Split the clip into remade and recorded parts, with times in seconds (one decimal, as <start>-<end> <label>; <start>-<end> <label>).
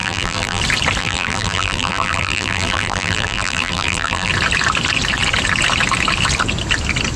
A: 0.0-0.6 remade; 0.6-1.0 recorded; 1.0-4.3 remade; 4.3-7.2 recorded